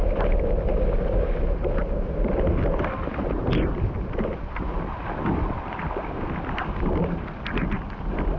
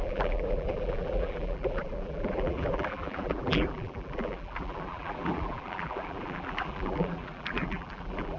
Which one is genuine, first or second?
first